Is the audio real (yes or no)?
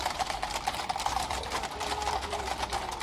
no